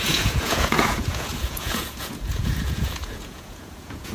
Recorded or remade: remade